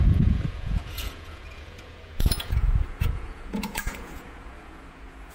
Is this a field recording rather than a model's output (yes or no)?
no